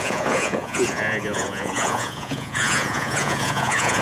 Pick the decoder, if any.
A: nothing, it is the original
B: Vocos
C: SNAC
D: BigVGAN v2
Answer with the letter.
B